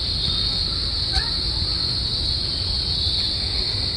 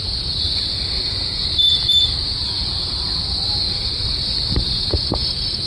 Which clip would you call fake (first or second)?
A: second